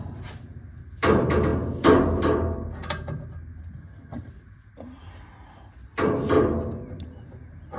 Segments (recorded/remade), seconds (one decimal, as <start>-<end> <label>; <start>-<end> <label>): 0.0-3.8 recorded; 3.8-4.3 remade; 4.3-7.8 recorded